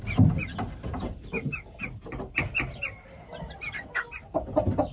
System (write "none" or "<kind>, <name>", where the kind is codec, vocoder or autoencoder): none